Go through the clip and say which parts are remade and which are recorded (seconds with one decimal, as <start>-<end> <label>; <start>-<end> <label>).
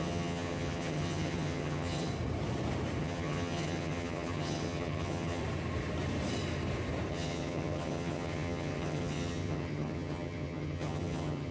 0.0-2.1 remade; 2.1-3.0 recorded; 3.0-5.4 remade; 5.4-7.1 recorded; 7.1-11.5 remade